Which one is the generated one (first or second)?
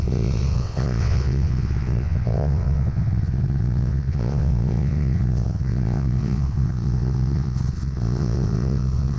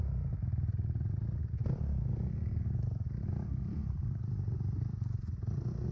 first